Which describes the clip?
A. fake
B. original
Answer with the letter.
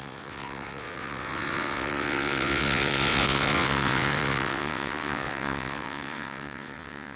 A